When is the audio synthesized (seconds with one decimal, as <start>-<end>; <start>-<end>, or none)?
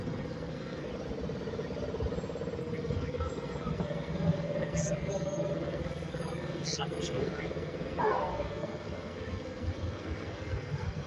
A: 0.0-0.9; 2.6-11.1